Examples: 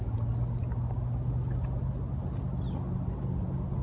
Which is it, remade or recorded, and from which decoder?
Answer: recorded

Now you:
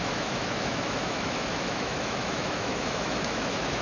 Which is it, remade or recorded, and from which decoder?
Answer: remade, autoencoder, DAC-VAE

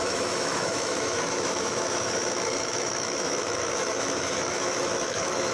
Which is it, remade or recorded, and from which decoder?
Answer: remade, autoencoder, DAC-VAE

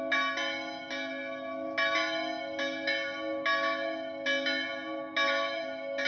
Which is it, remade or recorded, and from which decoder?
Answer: recorded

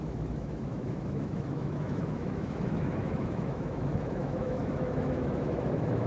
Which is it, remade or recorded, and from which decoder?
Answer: remade, autoencoder, DAC-VAE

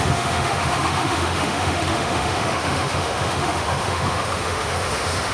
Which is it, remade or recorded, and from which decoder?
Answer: remade, autoencoder, DAC-VAE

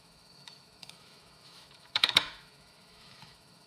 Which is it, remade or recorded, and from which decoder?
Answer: remade, autoencoder, DAC-VAE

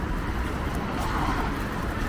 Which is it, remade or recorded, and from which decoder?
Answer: recorded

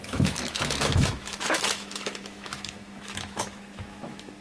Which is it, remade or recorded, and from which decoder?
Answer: remade, autoencoder, DAC-VAE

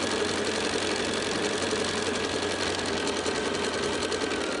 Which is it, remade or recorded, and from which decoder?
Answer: recorded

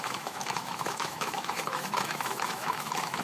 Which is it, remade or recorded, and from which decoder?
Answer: remade, autoencoder, DAC-VAE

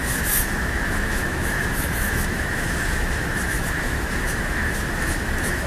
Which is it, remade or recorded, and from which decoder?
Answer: remade, autoencoder, DAC-VAE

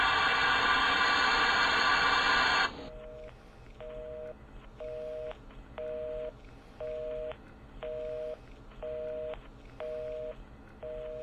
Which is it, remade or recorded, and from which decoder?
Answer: recorded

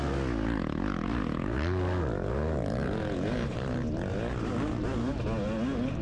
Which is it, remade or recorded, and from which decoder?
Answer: recorded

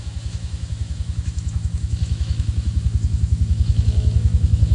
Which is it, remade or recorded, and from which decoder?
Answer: remade, autoencoder, DAC-VAE